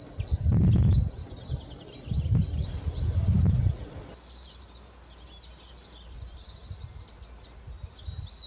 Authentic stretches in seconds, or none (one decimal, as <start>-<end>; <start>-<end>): 0.0-8.5

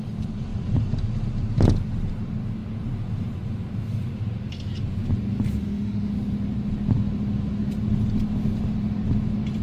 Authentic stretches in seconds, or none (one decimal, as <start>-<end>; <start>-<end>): 0.0-5.6; 6.1-9.6

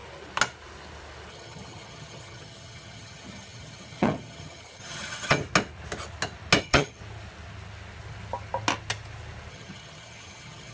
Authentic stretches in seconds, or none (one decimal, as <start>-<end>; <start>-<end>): 0.0-1.3; 5.4-6.6; 7.0-9.5

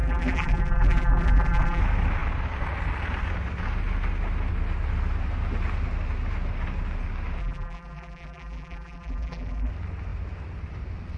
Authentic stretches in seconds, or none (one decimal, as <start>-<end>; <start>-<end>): 1.8-7.4; 9.7-11.2